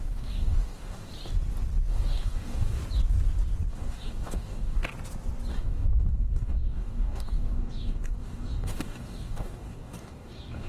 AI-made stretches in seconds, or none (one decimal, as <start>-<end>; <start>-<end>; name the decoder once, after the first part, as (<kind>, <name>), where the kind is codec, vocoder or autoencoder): 0.0-1.1 (codec, DAC); 1.9-2.8; 3.7-4.9; 5.5-10.7